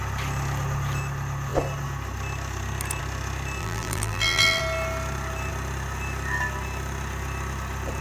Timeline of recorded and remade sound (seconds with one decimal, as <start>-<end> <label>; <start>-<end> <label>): 0.0-3.6 recorded; 3.6-4.6 remade; 4.6-8.0 recorded